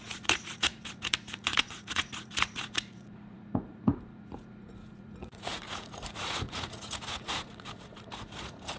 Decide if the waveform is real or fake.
fake